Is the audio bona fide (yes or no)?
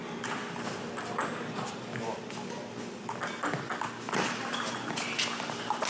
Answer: yes